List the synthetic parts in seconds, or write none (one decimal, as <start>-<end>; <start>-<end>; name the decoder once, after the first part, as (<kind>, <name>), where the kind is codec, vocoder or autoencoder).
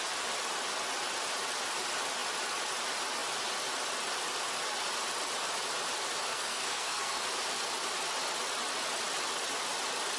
6.3-7.2 (codec, SNAC)